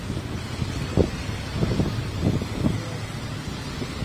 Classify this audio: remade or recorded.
recorded